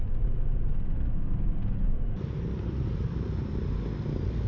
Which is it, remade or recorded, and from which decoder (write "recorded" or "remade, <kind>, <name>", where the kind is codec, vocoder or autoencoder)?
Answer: recorded